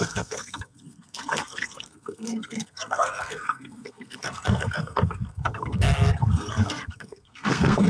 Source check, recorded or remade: remade